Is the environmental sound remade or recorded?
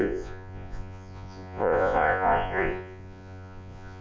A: remade